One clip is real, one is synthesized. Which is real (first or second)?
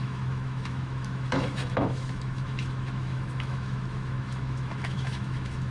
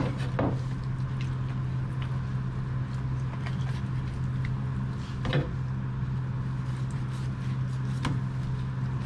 second